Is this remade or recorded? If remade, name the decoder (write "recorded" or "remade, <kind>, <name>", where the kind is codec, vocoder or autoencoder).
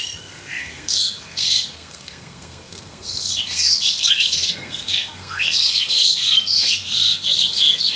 remade, codec, SNAC